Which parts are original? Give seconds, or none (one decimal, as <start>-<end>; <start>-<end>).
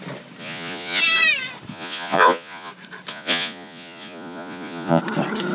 0.0-0.4; 1.0-1.7; 2.7-3.1; 5.0-5.5